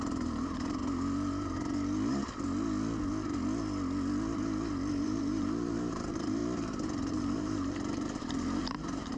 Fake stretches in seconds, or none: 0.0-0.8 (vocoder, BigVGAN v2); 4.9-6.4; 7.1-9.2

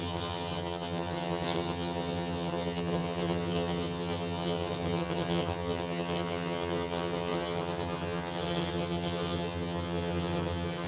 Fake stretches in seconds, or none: 0.0-10.9 (vocoder, HiFi-GAN)

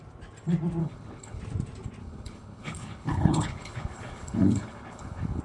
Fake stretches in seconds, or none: 0.8-1.4 (codec, HILCodec); 2.0-5.4

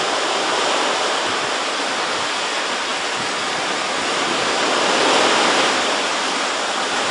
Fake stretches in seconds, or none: 6.1-7.1 (vocoder, BigVGAN v2)

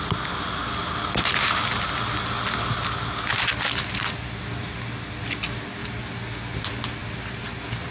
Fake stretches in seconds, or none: none

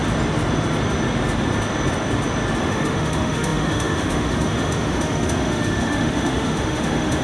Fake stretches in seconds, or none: 2.6-7.2 (autoencoder, DAC-VAE)

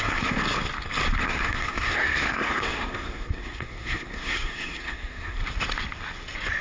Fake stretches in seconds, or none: 0.0-0.4 (codec, SNAC); 1.2-5.4